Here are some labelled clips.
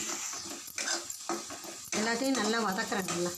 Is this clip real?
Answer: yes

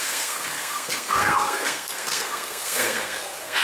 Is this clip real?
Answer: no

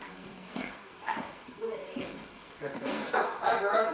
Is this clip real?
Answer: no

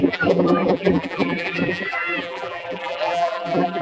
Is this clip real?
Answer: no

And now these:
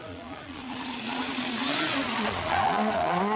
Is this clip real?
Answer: no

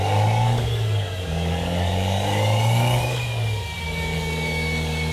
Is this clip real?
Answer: no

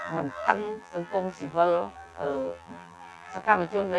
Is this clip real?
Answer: no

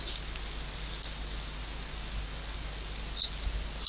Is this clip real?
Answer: yes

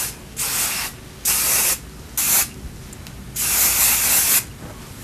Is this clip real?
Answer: yes